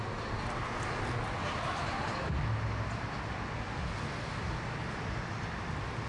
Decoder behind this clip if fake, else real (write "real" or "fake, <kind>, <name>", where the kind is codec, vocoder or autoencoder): real